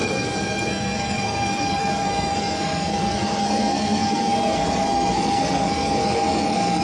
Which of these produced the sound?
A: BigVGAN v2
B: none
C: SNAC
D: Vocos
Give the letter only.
C